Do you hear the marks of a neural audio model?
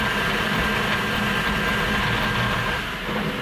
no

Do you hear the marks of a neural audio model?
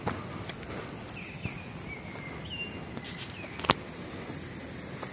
no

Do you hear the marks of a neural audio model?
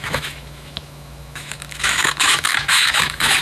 yes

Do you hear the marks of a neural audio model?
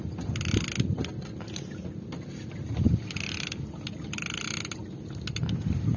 no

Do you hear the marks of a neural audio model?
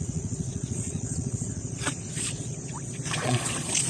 yes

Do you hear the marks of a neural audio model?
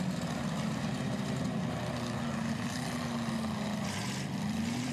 no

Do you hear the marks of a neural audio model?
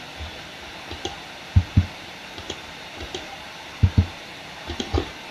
yes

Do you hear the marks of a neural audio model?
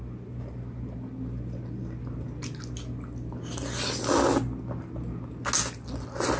no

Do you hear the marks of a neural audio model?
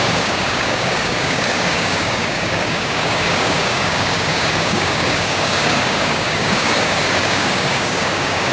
yes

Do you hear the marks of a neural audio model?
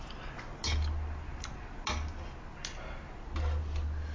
no